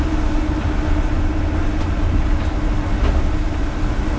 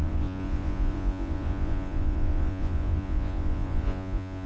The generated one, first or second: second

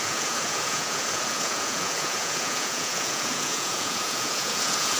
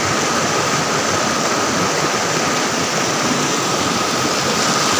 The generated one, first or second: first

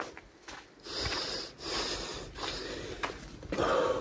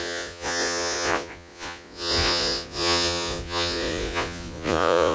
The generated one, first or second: second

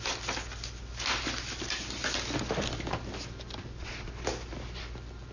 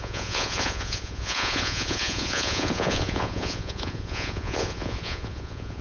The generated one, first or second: second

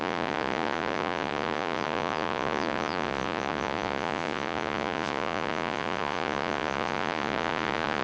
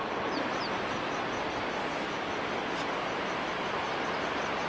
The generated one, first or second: first